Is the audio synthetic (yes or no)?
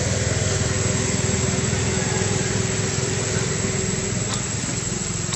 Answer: no